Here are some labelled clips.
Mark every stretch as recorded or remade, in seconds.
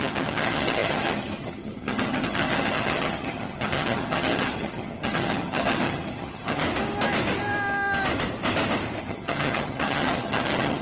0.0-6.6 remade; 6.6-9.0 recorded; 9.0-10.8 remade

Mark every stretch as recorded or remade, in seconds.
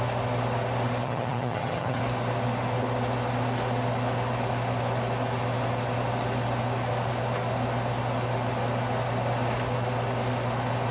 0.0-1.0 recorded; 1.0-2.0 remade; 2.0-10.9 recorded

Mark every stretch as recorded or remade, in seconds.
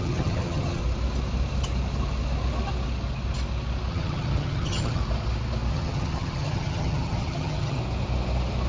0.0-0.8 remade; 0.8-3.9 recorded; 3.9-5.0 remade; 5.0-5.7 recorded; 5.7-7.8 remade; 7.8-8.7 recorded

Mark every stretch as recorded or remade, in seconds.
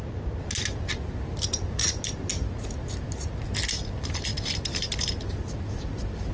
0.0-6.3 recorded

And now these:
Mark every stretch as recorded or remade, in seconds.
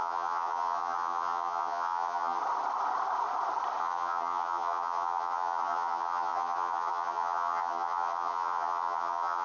0.0-2.4 remade; 2.4-3.8 recorded; 3.8-9.4 remade